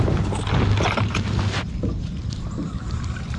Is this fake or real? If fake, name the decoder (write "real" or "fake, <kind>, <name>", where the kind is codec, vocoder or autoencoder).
real